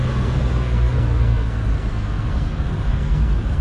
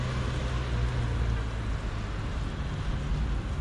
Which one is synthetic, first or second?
first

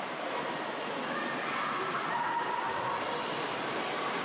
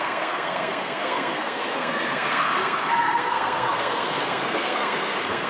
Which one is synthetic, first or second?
second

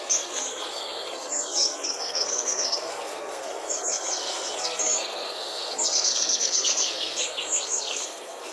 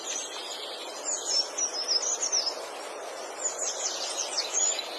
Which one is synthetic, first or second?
first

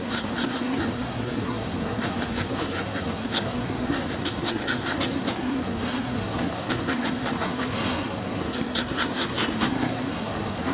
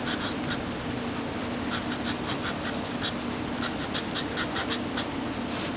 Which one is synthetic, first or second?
first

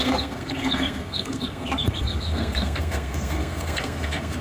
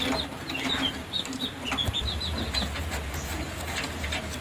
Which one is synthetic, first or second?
first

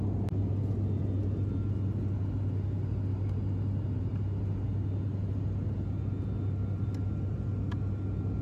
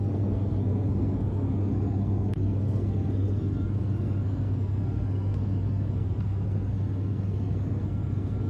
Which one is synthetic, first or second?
second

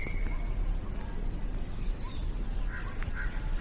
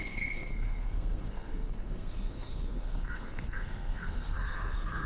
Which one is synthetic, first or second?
second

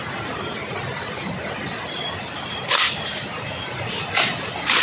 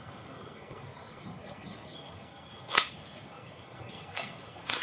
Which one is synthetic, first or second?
second